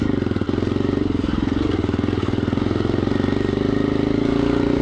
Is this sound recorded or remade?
recorded